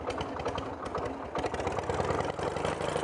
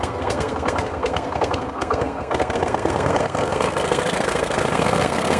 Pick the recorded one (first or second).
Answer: first